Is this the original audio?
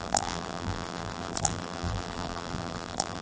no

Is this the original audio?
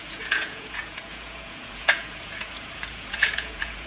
no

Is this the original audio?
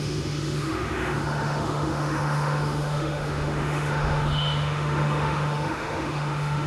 no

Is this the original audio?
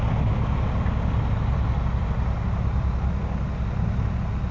yes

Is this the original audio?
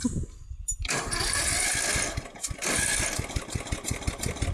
yes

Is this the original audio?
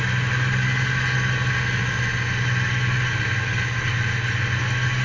yes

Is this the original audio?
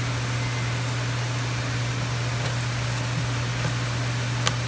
yes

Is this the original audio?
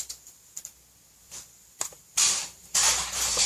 no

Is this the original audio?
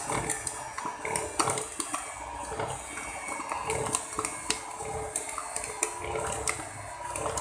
yes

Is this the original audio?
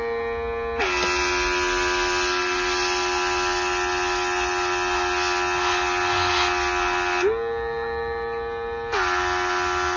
yes